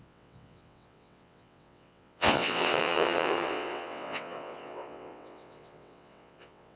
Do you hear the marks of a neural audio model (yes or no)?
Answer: yes